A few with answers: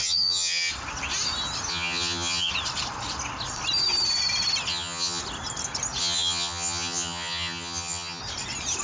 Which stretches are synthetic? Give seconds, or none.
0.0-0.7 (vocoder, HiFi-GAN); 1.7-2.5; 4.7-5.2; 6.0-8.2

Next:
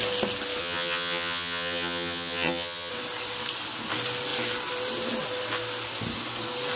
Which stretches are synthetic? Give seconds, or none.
0.6-2.9 (vocoder, HiFi-GAN)

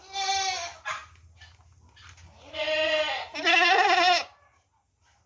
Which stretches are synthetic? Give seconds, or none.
none

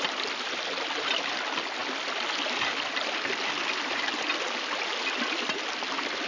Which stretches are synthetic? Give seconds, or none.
none